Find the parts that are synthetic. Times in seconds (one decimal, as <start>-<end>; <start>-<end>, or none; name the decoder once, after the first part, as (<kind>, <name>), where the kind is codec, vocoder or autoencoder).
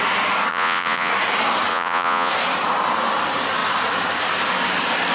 0.5-1.1 (vocoder, Vocos); 1.7-2.3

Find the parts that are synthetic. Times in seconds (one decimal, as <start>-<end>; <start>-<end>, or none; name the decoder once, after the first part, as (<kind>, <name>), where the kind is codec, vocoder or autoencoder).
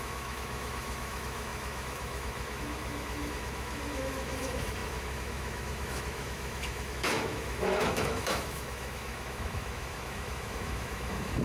0.0-11.4 (autoencoder, DAC-VAE)